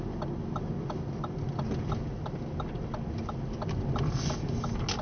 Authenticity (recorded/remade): recorded